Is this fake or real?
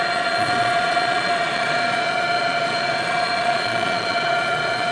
fake